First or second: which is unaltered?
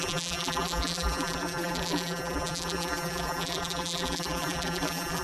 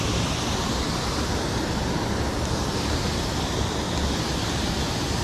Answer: second